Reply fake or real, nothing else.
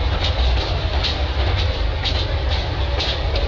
real